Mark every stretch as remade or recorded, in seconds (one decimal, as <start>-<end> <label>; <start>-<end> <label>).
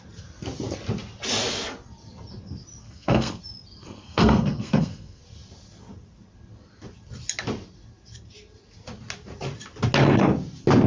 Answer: 0.0-2.8 recorded; 2.8-3.4 remade; 3.4-3.8 recorded; 3.8-5.2 remade; 5.2-10.9 recorded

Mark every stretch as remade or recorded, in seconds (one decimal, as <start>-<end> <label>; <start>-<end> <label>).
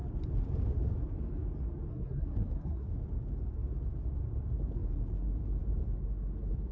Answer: 0.0-1.9 recorded; 1.9-2.9 remade; 2.9-6.7 recorded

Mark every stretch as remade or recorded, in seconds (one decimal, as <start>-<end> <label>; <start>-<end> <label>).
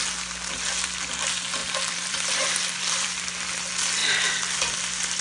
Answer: 0.0-1.6 recorded; 1.6-3.2 remade; 3.2-5.2 recorded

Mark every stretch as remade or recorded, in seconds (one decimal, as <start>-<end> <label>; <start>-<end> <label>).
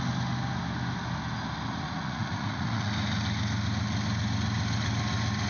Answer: 0.0-1.7 recorded; 1.7-2.9 remade; 2.9-5.5 recorded